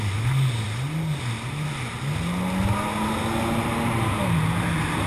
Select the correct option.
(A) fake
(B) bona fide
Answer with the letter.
B